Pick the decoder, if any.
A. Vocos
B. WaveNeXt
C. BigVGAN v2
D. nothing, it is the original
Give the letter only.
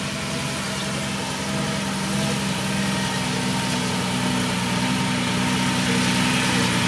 D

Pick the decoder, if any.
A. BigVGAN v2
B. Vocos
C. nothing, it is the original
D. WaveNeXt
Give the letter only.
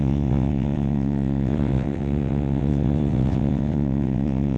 D